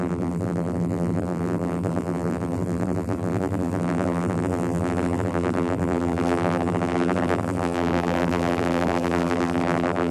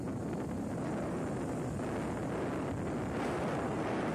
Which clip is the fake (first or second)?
first